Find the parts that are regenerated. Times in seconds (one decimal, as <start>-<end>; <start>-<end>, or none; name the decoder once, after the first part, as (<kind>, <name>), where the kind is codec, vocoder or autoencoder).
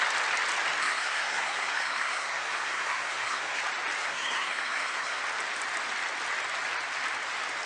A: 0.8-3.6 (codec, SNAC); 4.0-5.2